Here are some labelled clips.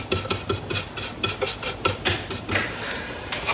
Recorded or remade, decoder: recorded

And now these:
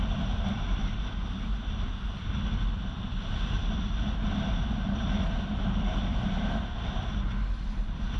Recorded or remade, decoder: recorded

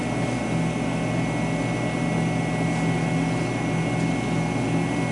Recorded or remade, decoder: recorded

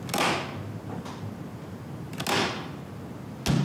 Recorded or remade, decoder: recorded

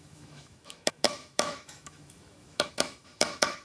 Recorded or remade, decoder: remade, autoencoder, DAC-VAE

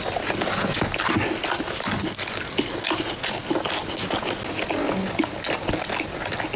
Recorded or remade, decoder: recorded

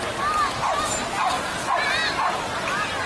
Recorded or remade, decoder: recorded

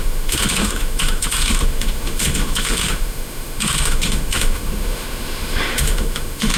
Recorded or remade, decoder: remade, autoencoder, DAC-VAE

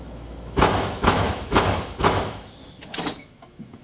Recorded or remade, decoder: remade, autoencoder, DAC-VAE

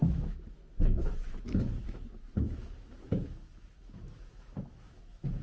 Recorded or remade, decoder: remade, autoencoder, DAC-VAE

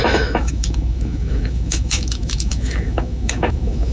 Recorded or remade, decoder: remade, autoencoder, DAC-VAE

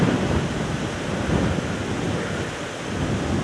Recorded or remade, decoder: recorded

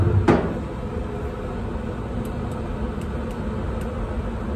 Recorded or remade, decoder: recorded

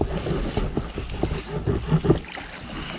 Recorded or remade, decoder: recorded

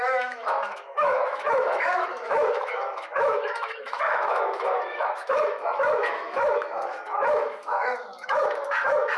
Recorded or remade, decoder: remade, autoencoder, DAC-VAE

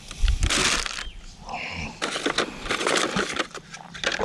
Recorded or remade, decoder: recorded